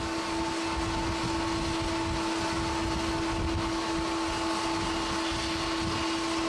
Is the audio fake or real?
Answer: real